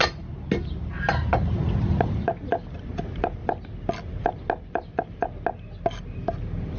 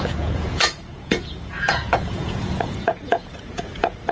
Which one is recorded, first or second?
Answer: first